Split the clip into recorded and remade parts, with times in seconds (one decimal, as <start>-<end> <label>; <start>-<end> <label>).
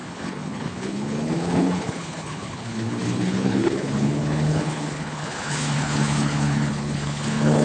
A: 0.0-7.6 remade